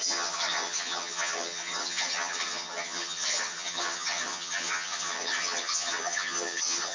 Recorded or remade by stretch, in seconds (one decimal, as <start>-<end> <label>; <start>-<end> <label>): 0.0-6.9 remade